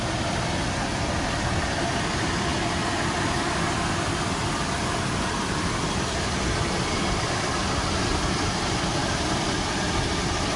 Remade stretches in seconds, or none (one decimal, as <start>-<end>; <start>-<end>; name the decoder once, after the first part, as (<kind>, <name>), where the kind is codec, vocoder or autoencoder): none